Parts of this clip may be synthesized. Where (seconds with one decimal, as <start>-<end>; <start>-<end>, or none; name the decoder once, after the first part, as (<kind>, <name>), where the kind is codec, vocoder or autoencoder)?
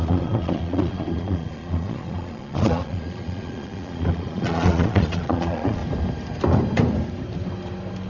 0.0-5.8 (vocoder, Vocos)